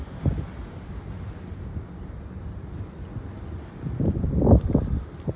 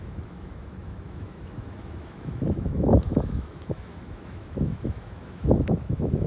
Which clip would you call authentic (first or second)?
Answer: first